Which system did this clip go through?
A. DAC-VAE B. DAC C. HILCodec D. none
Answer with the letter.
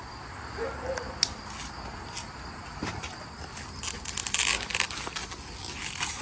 D